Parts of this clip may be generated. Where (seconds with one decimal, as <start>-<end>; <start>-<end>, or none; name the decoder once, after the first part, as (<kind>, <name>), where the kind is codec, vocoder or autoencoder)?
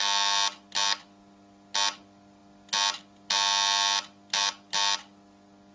none